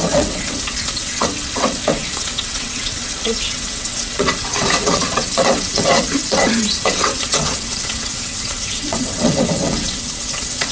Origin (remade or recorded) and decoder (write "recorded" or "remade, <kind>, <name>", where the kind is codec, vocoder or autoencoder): remade, vocoder, WaveNeXt